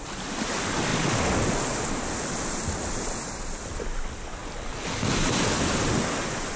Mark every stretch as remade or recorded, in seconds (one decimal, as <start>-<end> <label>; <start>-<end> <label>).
0.0-6.6 recorded